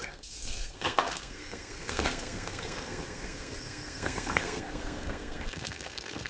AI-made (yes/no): yes